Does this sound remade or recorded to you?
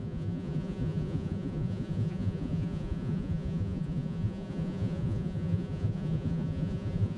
remade